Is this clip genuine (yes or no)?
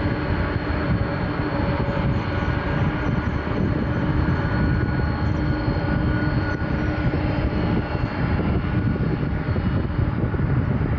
yes